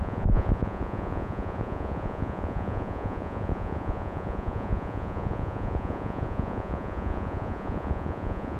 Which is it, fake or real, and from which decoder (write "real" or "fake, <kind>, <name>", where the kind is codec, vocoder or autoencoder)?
fake, vocoder, Vocos